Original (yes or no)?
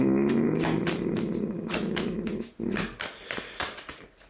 yes